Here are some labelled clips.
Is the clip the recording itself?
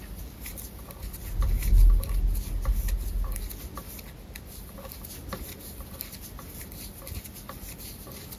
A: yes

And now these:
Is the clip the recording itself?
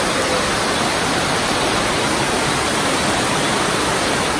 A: yes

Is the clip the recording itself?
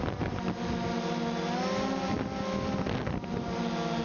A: yes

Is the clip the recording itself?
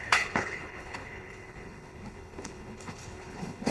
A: no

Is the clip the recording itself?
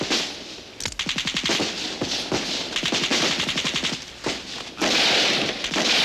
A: yes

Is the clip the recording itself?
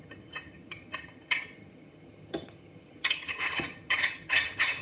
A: no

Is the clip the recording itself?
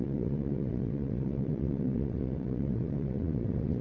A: no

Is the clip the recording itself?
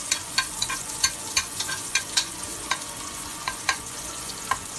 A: no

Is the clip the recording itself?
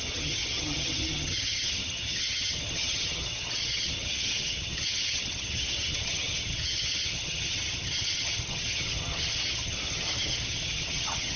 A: no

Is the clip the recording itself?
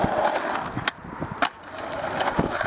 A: yes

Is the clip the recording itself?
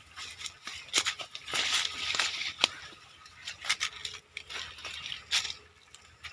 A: yes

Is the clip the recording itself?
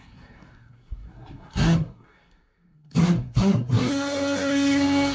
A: no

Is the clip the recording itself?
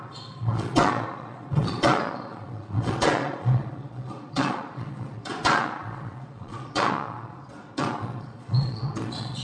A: no